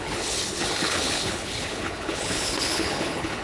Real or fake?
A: fake